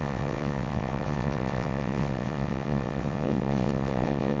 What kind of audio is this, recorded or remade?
remade